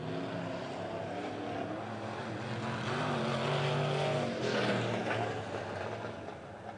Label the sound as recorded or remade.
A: recorded